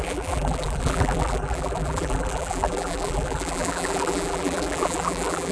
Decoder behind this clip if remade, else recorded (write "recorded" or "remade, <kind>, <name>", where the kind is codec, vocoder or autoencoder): remade, vocoder, BigVGAN v2